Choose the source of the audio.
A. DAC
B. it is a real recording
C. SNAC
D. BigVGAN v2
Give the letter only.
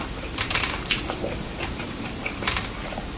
D